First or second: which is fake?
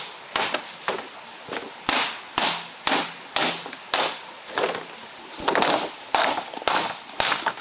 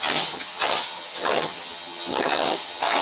second